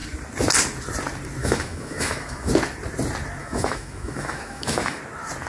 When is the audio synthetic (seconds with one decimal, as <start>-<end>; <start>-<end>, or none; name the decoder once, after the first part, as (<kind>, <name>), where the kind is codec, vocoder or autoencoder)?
1.4-2.5 (autoencoder, DAC-VAE); 3.4-5.0